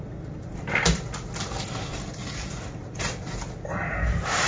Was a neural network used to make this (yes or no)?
no